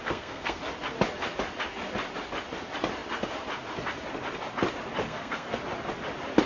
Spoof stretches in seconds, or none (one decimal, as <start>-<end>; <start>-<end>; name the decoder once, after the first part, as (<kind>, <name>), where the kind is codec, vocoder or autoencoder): 0.0-0.6 (codec, SNAC); 5.0-5.6